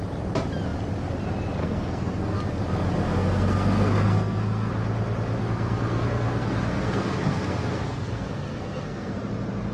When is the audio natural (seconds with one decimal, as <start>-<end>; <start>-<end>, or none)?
0.0-1.6; 2.4-3.1; 4.7-5.4; 9.2-9.7